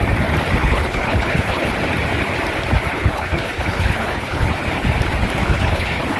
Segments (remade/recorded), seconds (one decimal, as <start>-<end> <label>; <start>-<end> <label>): 0.0-0.6 recorded; 0.6-1.7 remade; 1.7-2.9 recorded; 2.9-4.6 remade; 4.6-5.4 recorded; 5.4-6.2 remade